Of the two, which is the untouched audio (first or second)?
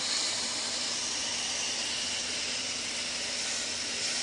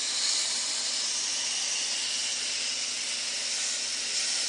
second